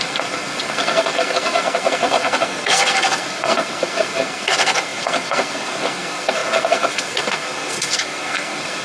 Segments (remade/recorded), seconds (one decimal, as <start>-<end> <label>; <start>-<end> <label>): 0.0-8.8 remade